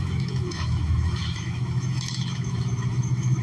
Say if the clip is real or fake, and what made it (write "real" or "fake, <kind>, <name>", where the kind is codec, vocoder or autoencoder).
fake, autoencoder, DAC-VAE